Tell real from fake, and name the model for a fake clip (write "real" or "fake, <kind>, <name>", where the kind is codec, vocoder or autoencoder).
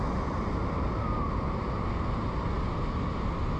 real